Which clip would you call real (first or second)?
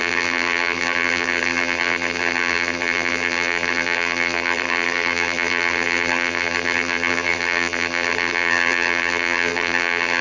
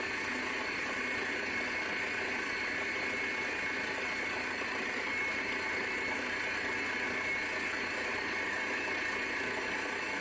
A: second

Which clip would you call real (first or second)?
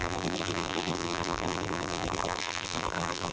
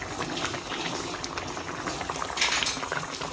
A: second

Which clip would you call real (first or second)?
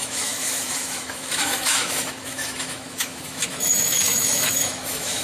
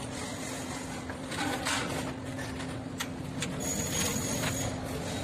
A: second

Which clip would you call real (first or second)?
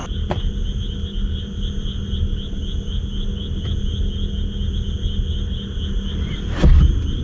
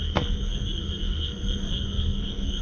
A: first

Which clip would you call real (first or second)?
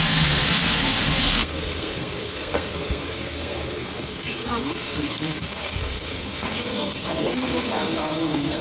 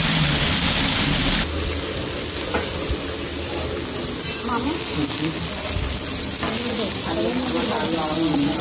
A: second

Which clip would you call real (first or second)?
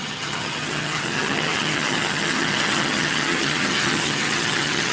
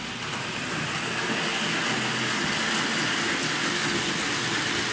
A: second